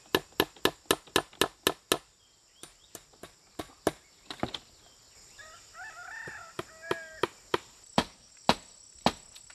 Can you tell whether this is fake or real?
real